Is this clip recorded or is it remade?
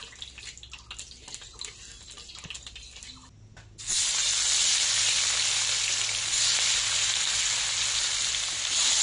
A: recorded